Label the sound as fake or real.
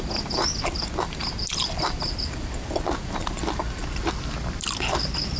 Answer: real